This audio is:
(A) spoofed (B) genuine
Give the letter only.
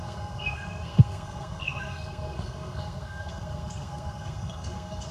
A